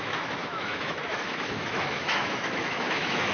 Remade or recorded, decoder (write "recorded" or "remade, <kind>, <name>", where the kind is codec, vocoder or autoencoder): remade, autoencoder, DAC-VAE